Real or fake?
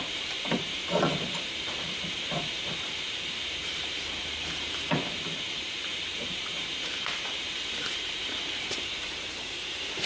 fake